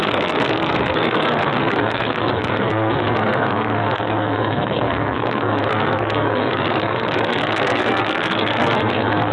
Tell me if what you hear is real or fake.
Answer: fake